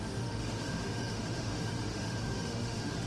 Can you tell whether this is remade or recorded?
remade